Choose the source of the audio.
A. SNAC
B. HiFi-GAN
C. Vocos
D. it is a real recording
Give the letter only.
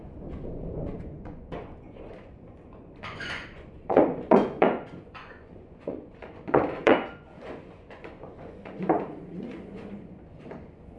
C